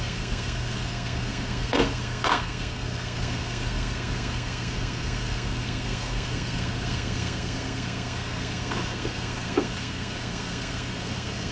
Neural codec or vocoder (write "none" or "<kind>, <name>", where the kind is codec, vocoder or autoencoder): codec, SNAC